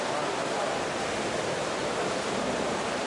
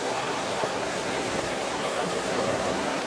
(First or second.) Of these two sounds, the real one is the first